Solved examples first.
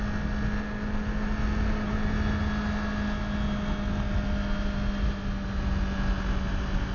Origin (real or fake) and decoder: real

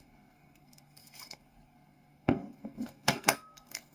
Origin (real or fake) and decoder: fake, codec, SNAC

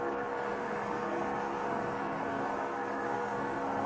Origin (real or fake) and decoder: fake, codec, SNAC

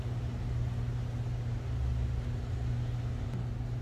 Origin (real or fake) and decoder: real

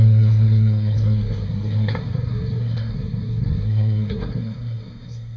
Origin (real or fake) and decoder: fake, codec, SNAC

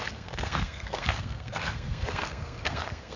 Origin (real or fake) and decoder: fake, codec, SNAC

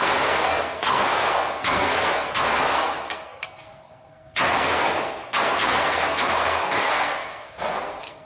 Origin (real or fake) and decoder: fake, codec, SNAC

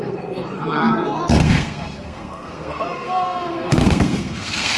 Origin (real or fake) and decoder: fake, codec, SNAC